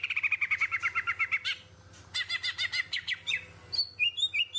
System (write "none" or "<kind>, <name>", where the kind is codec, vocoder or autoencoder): none